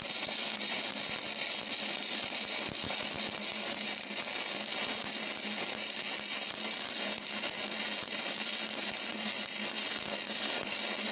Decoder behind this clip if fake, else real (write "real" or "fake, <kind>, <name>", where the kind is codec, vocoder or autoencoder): real